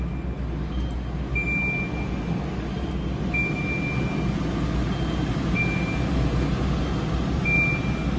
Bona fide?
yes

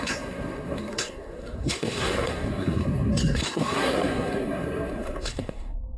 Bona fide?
no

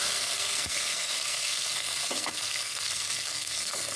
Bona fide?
no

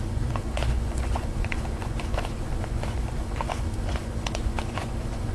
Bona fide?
no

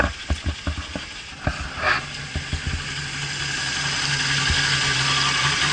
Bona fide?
yes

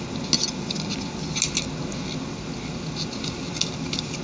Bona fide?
yes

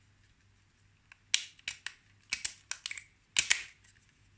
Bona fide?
yes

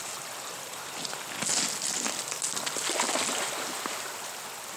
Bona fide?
yes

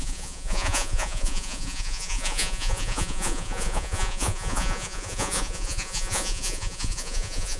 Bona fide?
no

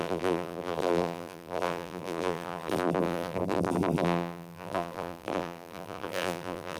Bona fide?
no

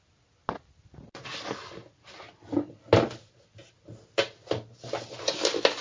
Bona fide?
yes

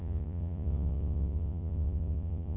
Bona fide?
no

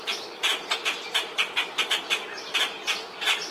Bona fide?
no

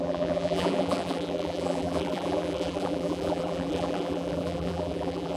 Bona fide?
no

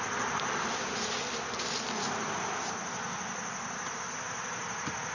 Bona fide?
yes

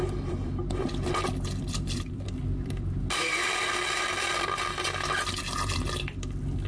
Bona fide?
no